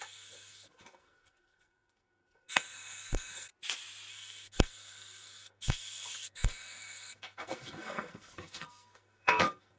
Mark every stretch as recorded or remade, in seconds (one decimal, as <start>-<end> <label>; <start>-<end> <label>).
0.0-3.5 remade; 3.5-4.1 recorded; 4.1-9.8 remade